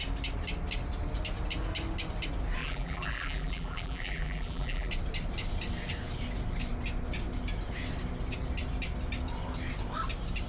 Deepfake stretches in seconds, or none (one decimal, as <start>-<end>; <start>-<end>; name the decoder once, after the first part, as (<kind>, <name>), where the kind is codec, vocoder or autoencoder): 2.6-4.9 (vocoder, BigVGAN v2)